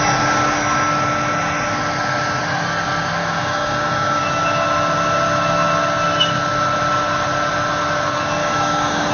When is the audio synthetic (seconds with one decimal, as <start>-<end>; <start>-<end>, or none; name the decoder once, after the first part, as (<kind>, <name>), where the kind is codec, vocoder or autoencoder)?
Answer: 3.2-4.2 (codec, DAC); 8.4-9.1